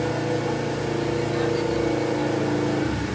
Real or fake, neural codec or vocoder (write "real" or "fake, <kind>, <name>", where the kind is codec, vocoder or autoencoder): real